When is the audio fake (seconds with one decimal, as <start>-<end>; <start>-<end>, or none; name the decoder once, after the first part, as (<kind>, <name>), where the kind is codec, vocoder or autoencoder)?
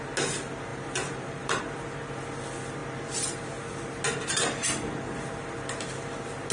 0.7-1.6 (vocoder, BigVGAN v2)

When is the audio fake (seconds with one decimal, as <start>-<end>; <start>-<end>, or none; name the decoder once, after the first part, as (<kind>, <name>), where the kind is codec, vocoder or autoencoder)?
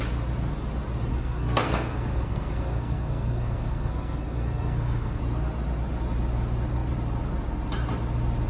1.1-5.2 (codec, SNAC)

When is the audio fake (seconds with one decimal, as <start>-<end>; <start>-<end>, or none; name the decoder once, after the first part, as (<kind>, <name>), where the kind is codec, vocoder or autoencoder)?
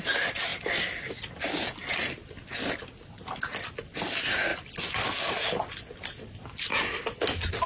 none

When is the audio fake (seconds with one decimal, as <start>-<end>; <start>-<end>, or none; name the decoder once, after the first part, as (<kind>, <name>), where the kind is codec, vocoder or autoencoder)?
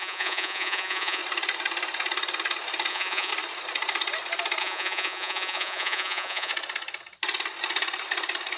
0.0-1.2 (vocoder, Vocos); 2.9-3.3; 4.6-6.5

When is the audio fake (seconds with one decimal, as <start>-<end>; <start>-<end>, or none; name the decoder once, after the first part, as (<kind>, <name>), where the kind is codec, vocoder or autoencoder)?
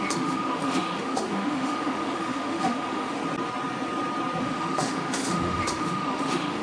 0.0-3.2 (autoencoder, DAC-VAE); 4.4-6.6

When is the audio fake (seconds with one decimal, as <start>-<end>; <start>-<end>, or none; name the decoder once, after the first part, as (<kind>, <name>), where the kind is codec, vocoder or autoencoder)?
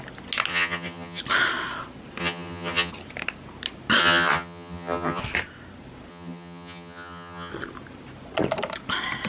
0.5-1.2 (vocoder, HiFi-GAN); 2.2-2.9; 4.0-5.2; 6.1-7.5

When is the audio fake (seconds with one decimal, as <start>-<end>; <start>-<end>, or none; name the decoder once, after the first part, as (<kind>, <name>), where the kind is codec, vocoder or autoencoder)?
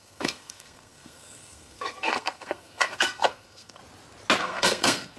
0.0-3.8 (codec, SNAC); 4.4-5.2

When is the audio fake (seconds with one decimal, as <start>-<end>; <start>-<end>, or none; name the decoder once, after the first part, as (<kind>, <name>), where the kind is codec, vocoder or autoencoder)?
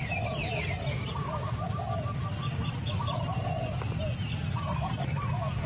0.4-3.8 (vocoder, BigVGAN v2); 4.7-5.3